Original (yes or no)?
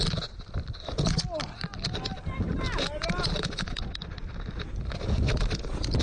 yes